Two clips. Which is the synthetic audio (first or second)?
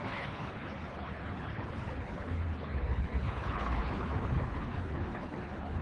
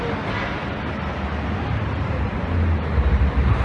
first